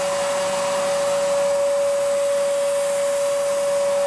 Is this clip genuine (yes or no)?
yes